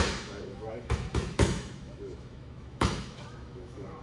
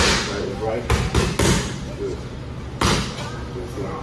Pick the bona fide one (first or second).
second